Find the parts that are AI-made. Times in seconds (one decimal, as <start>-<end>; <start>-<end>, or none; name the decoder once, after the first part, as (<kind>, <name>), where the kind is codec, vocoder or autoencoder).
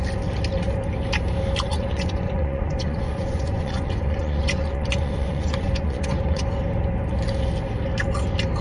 1.7-6.4 (vocoder, Vocos)